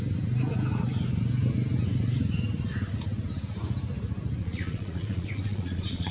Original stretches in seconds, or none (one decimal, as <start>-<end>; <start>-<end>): 0.0-4.4